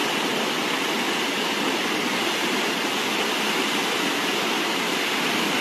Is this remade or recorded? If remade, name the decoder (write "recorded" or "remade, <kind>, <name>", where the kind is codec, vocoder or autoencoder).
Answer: recorded